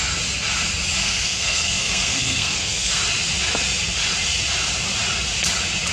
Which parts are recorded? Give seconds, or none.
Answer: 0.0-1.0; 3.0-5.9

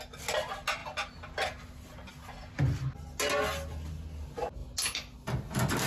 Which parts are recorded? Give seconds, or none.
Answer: 0.0-5.9

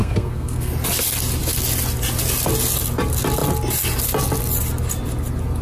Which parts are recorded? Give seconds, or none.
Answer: 0.7-5.6

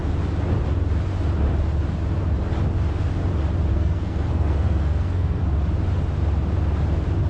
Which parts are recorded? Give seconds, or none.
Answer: 0.0-3.7; 5.4-7.3

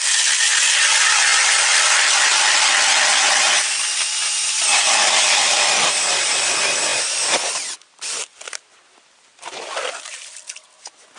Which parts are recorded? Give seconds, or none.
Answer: 0.0-11.2

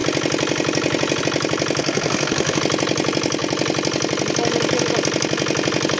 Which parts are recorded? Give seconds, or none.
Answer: 0.0-1.8; 2.6-6.0